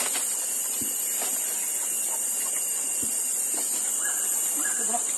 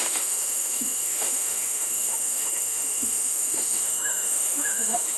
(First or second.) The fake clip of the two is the second